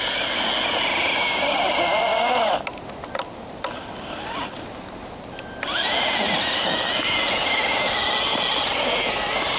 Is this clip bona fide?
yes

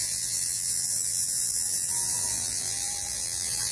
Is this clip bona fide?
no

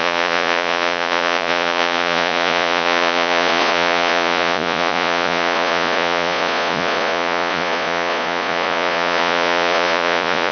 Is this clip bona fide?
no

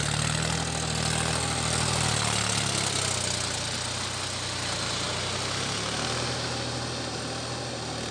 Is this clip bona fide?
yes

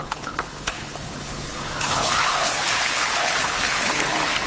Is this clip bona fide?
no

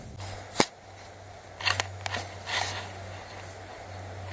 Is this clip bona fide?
yes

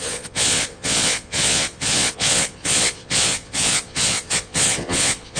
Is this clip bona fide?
no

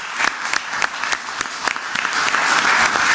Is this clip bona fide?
yes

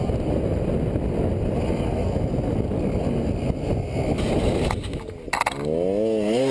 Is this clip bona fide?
yes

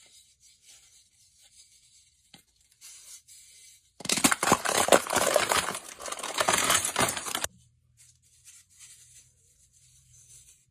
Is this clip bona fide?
no